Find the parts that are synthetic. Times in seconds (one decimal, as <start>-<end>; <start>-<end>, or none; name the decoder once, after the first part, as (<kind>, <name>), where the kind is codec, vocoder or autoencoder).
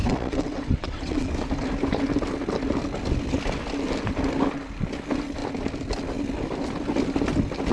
0.0-1.3 (vocoder, WaveNeXt)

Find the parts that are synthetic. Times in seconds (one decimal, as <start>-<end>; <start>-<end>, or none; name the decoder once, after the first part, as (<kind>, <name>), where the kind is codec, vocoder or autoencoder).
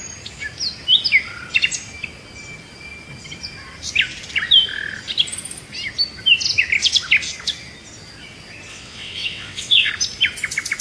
8.7-9.9 (vocoder, WaveNeXt)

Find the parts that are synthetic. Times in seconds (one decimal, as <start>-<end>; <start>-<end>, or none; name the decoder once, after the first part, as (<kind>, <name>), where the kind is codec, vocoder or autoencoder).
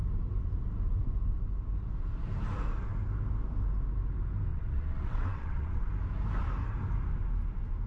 4.5-5.9 (vocoder, WaveNeXt)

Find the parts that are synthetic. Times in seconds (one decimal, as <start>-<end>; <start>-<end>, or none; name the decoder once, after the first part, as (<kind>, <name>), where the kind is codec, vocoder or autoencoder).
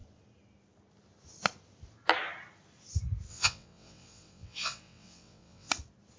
3.3-5.7 (vocoder, WaveNeXt)